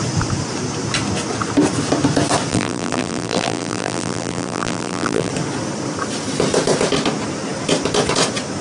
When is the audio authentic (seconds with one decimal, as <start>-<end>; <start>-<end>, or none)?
0.0-2.5; 5.3-8.6